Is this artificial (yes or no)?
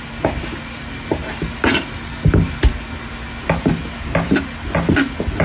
no